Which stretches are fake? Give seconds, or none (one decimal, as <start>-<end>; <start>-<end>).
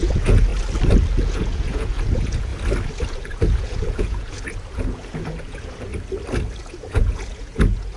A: 0.0-0.5; 1.1-2.5; 3.1-5.9; 6.6-8.0